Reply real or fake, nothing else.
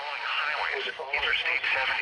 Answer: real